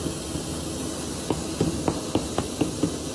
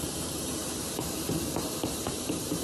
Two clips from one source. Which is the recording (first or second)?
first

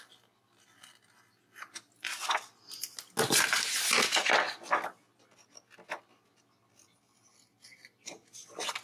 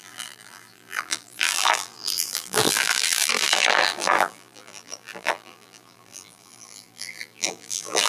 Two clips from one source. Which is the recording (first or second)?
first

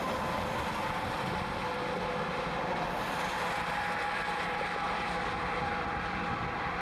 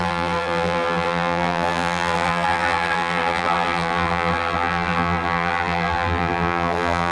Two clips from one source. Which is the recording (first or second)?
first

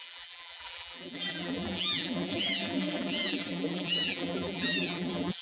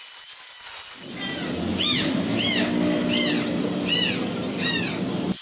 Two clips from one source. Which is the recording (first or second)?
second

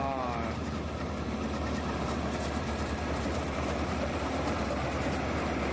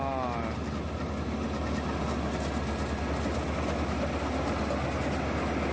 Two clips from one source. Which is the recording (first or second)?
second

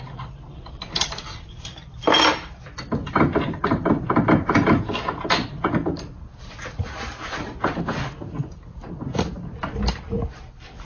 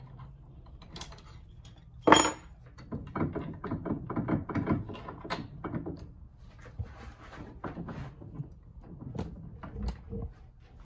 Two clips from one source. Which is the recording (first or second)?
second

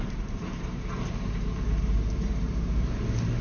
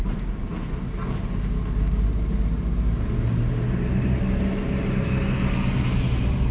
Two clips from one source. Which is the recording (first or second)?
second